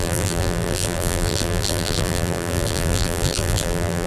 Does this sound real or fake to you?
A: fake